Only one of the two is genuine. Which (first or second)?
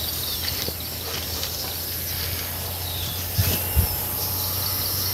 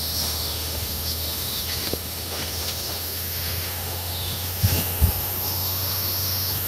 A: first